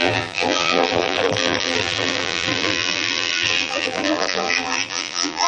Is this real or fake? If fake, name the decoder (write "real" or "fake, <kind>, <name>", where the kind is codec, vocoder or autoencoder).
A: fake, vocoder, BigVGAN v2